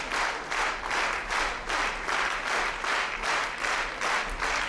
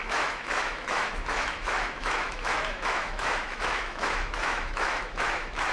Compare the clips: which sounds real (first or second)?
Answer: first